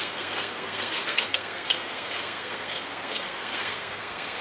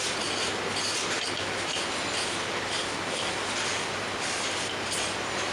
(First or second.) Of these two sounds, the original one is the second